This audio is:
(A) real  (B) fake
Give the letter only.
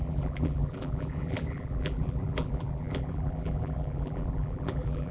B